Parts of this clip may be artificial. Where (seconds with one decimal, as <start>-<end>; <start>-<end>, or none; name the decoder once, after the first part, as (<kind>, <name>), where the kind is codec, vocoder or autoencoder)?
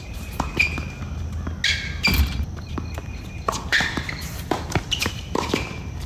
0.0-0.5 (vocoder, BigVGAN v2); 2.5-6.1